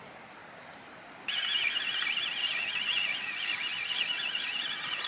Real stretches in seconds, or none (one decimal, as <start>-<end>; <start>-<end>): 0.0-2.4

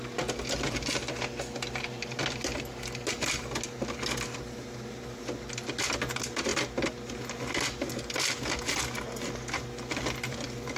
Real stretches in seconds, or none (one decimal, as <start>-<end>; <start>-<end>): 0.0-10.8